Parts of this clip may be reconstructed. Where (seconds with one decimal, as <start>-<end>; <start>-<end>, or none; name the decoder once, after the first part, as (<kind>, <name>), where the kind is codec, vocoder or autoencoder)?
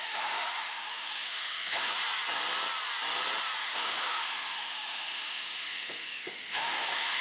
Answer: 0.0-2.0 (autoencoder, DAC-VAE); 3.6-7.2